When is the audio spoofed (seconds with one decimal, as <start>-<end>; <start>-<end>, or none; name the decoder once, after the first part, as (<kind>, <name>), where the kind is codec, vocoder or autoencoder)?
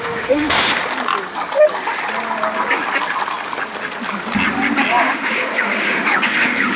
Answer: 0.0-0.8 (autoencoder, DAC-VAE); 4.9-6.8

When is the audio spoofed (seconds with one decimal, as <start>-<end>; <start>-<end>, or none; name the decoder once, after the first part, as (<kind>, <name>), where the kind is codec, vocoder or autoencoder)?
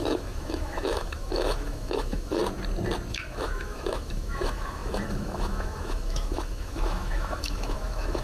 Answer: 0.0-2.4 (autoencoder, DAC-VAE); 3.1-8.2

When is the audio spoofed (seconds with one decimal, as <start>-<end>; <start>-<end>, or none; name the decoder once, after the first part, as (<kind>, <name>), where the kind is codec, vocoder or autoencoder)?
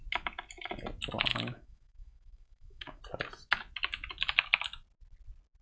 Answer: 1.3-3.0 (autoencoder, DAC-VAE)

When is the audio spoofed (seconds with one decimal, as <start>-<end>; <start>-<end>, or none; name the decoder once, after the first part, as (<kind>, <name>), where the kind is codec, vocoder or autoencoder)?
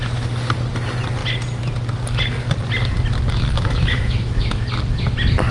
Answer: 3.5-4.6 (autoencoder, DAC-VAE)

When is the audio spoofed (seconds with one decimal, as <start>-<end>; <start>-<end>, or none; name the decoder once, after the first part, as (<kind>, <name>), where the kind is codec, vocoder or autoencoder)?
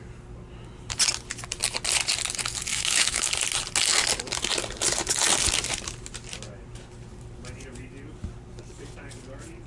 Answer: 2.7-3.3 (autoencoder, DAC-VAE)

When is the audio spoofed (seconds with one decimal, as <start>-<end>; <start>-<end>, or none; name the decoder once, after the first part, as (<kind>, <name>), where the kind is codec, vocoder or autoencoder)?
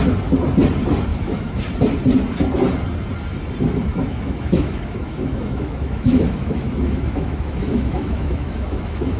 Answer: 1.1-1.6 (autoencoder, DAC-VAE); 3.9-9.2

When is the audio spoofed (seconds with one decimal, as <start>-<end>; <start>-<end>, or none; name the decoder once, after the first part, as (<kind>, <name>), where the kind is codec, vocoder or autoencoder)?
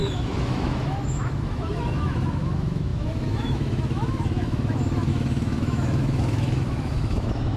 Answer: 0.0-7.6 (autoencoder, DAC-VAE)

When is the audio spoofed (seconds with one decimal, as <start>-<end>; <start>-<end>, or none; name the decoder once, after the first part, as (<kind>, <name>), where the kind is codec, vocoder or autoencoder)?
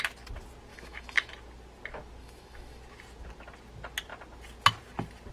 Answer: 0.7-1.3 (autoencoder, DAC-VAE); 2.2-2.8